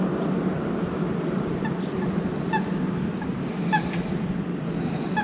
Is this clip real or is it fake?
real